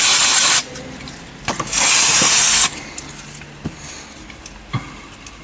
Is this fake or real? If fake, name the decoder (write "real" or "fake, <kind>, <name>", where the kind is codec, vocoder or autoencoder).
real